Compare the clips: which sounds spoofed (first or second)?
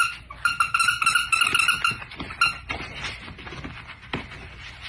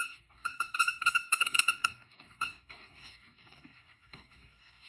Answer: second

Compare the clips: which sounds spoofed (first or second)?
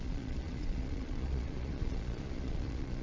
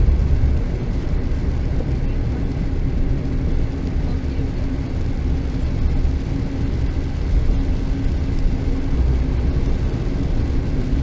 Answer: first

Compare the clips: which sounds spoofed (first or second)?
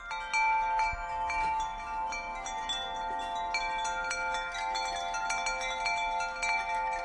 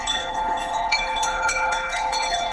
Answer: second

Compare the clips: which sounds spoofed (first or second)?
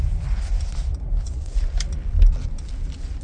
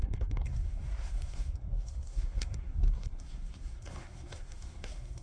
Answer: second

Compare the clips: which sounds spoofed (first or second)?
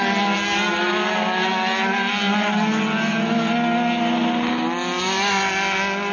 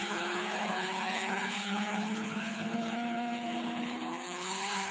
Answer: second